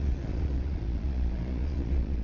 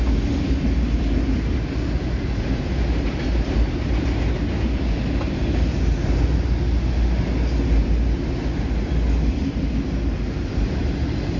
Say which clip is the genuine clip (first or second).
second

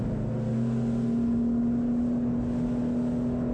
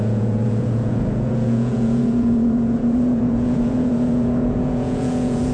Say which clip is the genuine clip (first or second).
first